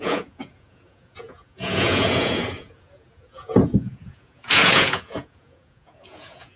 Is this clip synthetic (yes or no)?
yes